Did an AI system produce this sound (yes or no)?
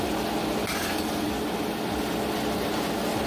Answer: no